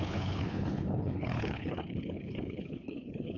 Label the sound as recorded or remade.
remade